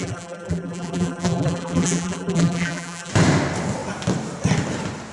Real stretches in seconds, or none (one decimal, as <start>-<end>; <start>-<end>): 3.1-5.1